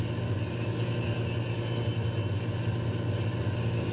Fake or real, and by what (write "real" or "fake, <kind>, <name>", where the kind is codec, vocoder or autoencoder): real